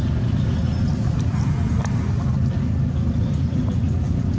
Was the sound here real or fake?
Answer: real